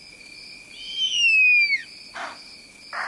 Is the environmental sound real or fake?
real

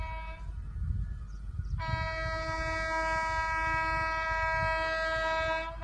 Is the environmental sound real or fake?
real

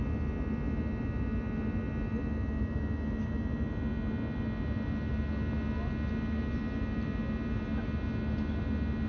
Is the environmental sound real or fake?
real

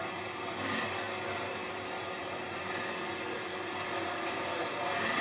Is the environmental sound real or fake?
real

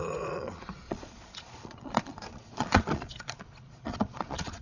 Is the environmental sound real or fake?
fake